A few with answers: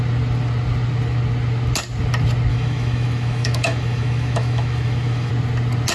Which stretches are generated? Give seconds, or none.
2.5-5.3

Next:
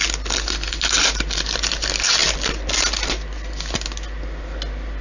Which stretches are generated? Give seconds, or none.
none

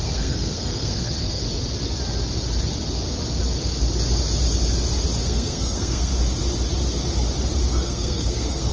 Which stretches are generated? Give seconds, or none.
0.0-1.4; 5.2-6.1; 7.7-8.7

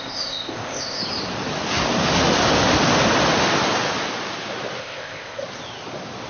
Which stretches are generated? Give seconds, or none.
0.0-1.0; 4.8-5.4

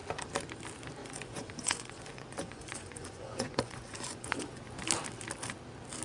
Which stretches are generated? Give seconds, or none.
1.0-4.6

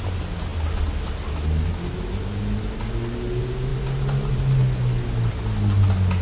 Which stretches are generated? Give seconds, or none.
none